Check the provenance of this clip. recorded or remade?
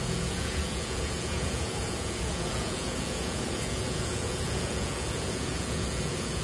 remade